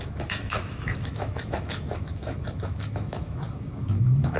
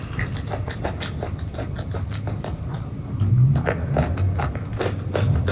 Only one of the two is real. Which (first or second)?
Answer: second